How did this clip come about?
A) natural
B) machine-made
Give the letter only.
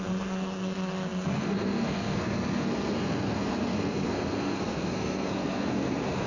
B